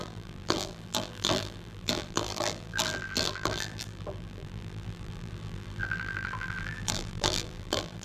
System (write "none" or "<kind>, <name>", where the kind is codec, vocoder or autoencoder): vocoder, BigVGAN v2